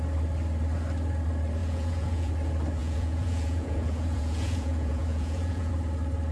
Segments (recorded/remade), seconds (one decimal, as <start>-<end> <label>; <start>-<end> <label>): 0.0-1.6 recorded; 1.6-2.3 remade; 2.3-2.8 recorded; 2.8-5.7 remade; 5.7-6.3 recorded